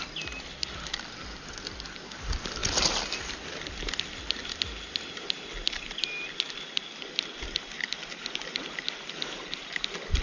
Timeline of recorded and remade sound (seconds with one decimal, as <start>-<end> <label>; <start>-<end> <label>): 0.0-10.2 recorded